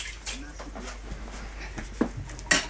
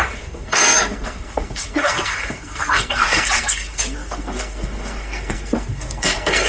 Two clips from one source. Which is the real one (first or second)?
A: first